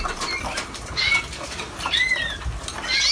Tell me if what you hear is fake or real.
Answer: real